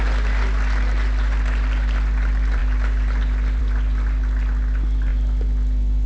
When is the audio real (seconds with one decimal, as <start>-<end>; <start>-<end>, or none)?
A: 0.0-6.1

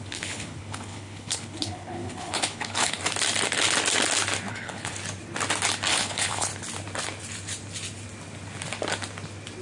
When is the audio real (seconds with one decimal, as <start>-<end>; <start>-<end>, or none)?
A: 3.0-4.5; 4.9-5.9; 6.5-9.6

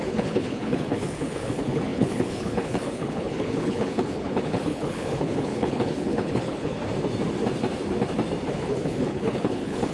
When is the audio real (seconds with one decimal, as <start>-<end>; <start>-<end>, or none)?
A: 6.8-8.5

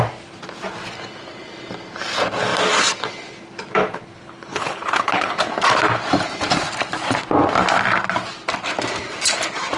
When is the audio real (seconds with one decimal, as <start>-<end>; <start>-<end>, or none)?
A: 0.0-3.8; 5.5-9.8

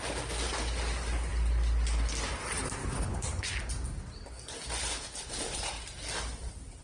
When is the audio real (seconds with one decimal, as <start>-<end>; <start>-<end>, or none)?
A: 0.0-2.8; 3.5-4.8; 5.7-6.8

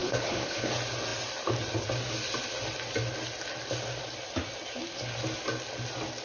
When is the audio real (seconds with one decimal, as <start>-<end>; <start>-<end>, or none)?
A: 0.7-6.2

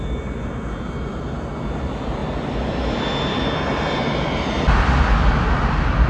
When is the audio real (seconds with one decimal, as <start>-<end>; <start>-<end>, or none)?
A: 0.0-6.1